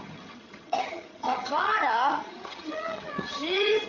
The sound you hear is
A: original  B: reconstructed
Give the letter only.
B